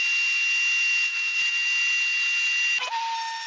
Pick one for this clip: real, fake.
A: real